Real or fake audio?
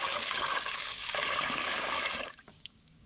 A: fake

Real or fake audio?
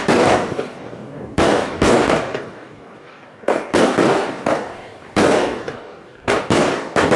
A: fake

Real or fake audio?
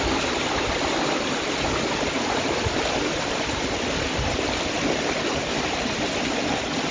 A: real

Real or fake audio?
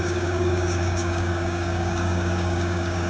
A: fake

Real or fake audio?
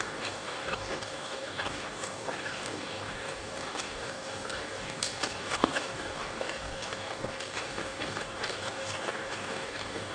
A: fake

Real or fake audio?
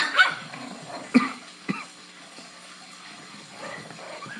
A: fake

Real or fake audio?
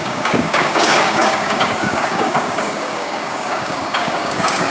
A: fake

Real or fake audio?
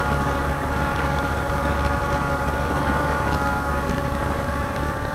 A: fake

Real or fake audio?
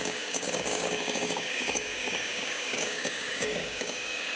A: fake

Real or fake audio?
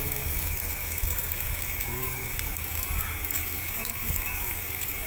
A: fake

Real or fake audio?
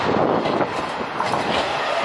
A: real